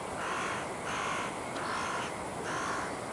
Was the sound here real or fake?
real